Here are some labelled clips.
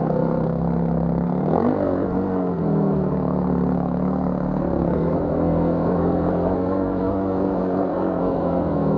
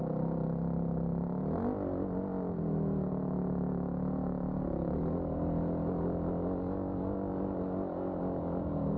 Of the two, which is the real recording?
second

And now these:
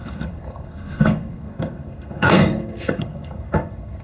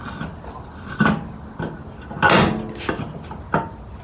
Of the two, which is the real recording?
second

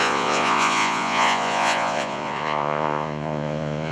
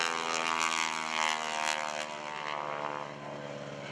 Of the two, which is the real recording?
second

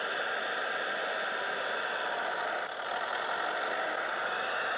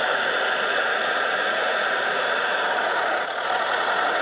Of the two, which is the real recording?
first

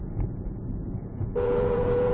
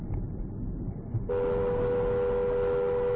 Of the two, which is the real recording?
second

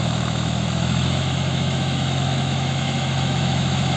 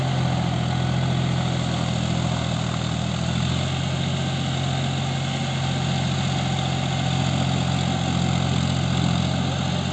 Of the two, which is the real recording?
second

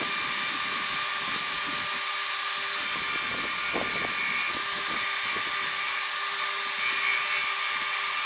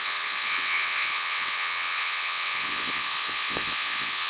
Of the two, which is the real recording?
first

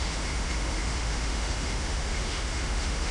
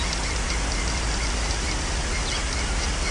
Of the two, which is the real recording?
second